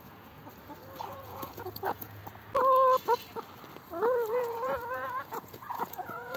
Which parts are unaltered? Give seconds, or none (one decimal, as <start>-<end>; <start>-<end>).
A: 0.4-1.1; 2.2-4.3